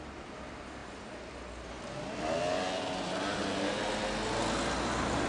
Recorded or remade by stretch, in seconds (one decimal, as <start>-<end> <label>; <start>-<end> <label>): 0.0-5.3 recorded